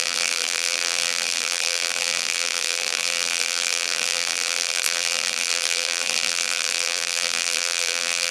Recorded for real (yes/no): no